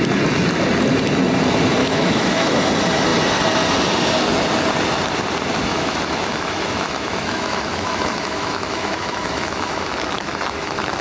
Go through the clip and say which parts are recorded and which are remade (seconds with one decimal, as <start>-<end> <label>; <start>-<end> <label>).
0.0-1.8 recorded; 1.8-2.6 remade; 2.6-5.7 recorded; 5.7-11.0 remade